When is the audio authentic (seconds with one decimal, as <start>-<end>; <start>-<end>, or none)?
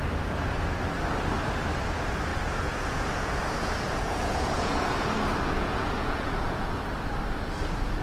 0.0-2.3; 6.8-8.0